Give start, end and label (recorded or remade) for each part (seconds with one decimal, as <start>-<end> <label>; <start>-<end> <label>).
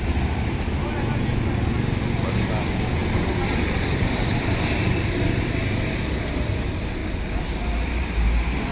0.0-7.0 remade; 7.0-8.7 recorded